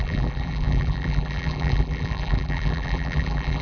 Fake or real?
fake